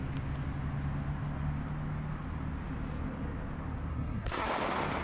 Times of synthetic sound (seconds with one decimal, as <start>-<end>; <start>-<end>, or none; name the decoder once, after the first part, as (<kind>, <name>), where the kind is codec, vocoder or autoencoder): 3.9-4.5 (codec, SNAC)